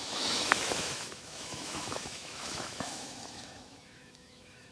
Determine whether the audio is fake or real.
fake